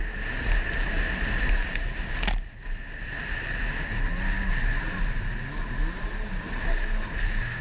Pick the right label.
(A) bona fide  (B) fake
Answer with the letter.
A